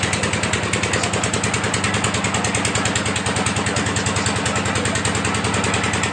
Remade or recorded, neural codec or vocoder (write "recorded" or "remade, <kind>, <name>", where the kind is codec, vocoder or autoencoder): recorded